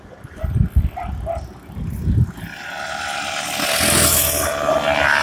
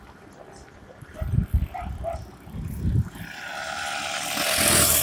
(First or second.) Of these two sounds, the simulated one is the second